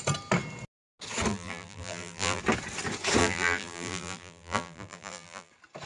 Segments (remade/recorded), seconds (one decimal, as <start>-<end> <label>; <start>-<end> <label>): 0.0-1.3 recorded; 1.3-2.4 remade; 2.4-3.2 recorded; 3.2-5.5 remade; 5.5-5.9 recorded